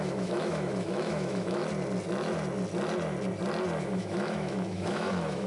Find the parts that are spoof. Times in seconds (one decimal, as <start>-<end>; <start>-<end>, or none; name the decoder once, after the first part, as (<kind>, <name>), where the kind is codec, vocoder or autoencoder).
0.0-1.6 (autoencoder, DAC-VAE); 3.8-5.5